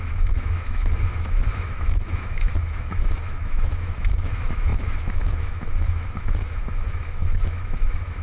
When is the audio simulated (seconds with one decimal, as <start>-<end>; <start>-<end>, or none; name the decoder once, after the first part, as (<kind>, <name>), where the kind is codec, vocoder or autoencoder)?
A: 0.0-8.2 (autoencoder, DAC-VAE)